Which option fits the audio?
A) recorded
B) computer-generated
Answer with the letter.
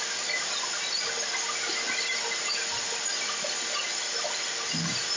A